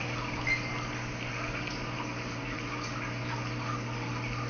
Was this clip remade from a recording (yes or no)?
no